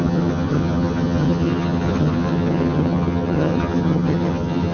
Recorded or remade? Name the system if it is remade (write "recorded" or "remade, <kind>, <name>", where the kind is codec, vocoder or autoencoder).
remade, vocoder, HiFi-GAN